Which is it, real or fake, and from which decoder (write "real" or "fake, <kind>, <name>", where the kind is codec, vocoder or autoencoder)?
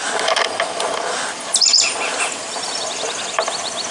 real